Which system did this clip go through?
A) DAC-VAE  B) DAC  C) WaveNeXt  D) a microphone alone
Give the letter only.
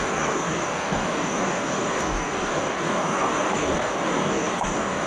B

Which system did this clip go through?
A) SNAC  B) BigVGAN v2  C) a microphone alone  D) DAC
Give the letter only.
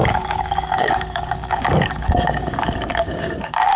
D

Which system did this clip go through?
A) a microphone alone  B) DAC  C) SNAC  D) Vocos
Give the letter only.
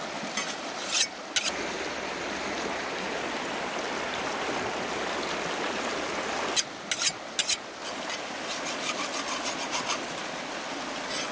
A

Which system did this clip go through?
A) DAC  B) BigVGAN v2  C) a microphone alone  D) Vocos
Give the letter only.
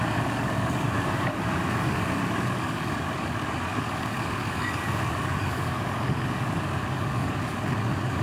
A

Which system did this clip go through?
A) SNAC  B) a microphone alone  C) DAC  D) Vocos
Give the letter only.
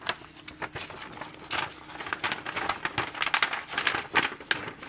B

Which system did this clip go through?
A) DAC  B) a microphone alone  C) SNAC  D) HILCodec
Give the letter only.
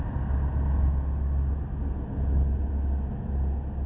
B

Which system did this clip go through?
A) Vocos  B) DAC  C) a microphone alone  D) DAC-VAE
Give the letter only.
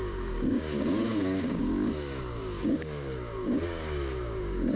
B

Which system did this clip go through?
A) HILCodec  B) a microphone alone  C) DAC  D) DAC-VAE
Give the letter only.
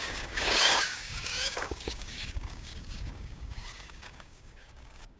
C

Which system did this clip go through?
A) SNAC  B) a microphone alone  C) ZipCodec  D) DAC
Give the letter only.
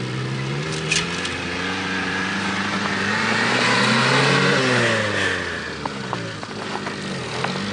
B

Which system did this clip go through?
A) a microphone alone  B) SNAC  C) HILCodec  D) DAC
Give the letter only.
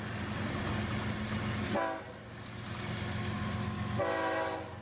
A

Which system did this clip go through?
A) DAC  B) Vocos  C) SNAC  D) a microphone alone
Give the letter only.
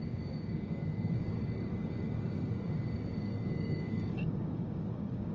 A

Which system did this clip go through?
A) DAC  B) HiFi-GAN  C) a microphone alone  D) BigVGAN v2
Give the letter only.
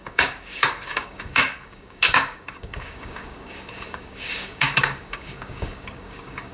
A